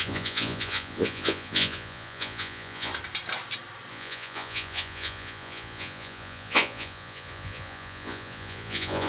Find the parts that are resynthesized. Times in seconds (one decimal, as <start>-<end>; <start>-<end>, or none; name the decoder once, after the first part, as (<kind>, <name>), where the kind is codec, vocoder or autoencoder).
0.0-2.9 (vocoder, Vocos); 3.9-9.1